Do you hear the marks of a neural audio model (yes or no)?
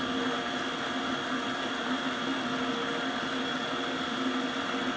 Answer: no